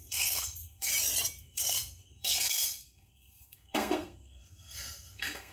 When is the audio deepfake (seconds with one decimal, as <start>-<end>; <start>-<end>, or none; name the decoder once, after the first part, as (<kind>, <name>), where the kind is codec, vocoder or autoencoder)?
0.0-0.9 (codec, SNAC); 1.4-5.5